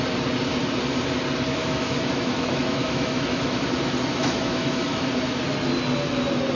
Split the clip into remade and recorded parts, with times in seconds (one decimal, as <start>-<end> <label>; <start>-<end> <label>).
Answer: 0.0-1.6 recorded; 1.6-3.6 remade; 3.6-4.1 recorded; 4.1-5.1 remade; 5.1-6.5 recorded